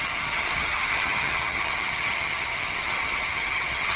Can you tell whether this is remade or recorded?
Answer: remade